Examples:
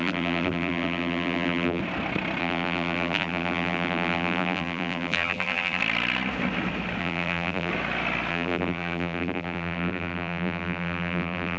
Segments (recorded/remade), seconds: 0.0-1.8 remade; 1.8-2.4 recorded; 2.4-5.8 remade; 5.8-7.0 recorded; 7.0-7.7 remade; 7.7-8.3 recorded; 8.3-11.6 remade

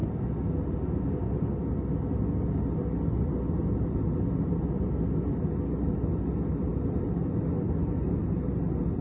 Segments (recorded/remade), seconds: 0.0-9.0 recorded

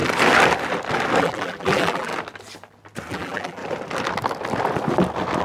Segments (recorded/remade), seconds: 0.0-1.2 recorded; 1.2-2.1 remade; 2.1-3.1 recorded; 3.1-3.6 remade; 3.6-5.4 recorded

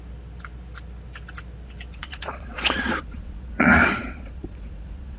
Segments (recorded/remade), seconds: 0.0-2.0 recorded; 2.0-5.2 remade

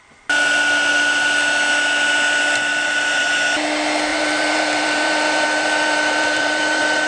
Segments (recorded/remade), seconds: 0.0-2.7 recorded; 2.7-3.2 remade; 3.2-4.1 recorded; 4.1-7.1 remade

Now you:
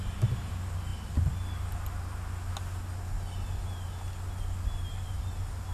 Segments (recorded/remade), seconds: 0.0-5.7 recorded

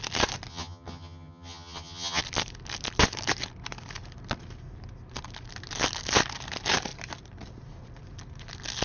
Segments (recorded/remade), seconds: 0.0-0.5 recorded; 0.5-2.2 remade; 2.2-8.8 recorded

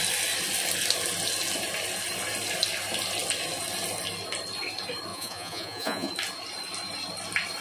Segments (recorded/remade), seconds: 0.0-5.1 recorded; 5.1-6.1 remade; 6.1-7.6 recorded